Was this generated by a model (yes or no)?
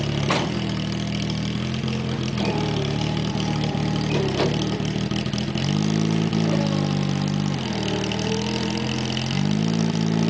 no